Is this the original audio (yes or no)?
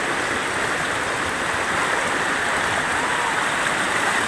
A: yes